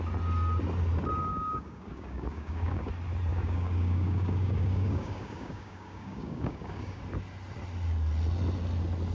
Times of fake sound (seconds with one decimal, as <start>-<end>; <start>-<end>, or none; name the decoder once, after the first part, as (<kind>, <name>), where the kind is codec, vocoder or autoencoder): 1.3-2.9 (codec, DAC); 3.3-7.0

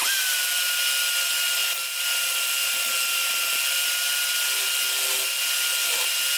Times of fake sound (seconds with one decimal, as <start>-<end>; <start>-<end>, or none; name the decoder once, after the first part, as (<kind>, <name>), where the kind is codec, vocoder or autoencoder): none

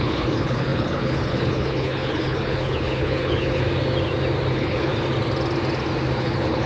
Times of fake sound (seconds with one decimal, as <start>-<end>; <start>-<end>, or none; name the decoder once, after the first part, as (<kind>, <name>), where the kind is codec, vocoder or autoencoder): 0.0-3.6 (codec, HILCodec); 4.5-4.9; 6.2-6.7

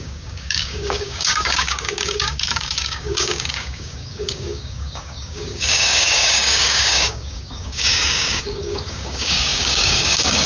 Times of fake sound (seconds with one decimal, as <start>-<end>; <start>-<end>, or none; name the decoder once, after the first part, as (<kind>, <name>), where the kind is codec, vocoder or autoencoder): 0.0-10.5 (codec, DAC)

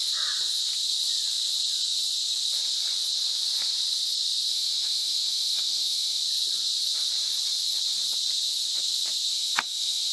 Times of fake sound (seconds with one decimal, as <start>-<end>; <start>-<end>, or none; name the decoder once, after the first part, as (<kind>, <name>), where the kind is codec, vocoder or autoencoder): 4.5-6.2 (autoencoder, DAC-VAE); 9.3-10.1

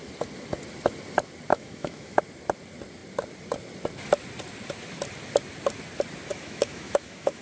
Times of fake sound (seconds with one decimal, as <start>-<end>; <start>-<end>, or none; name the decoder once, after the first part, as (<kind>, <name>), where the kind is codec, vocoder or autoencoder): 1.5-2.2 (autoencoder, DAC-VAE); 6.3-7.4

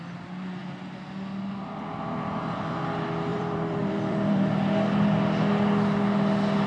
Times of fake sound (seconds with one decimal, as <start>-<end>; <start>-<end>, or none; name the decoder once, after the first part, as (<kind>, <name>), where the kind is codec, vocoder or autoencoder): 3.3-4.5 (vocoder, BigVGAN v2)

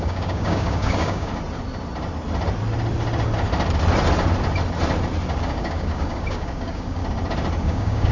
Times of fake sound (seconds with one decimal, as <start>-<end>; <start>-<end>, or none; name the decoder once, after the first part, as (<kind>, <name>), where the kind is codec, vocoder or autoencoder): 0.0-1.3 (codec, DAC); 5.4-7.0; 7.6-8.1